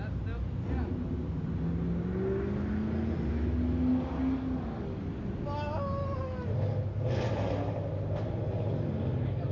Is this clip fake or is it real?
real